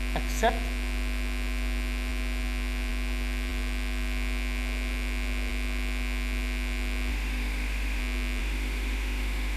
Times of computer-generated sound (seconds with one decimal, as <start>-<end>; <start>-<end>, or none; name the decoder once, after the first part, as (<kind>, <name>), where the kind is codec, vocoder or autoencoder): 7.1-8.0 (autoencoder, DAC-VAE); 8.4-9.6